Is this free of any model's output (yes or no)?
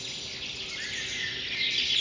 yes